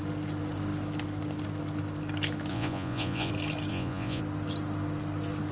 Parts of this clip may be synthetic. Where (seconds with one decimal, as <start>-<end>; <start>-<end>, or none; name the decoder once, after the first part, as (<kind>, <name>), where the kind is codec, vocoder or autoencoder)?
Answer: 2.5-3.3 (vocoder, Vocos); 3.7-4.2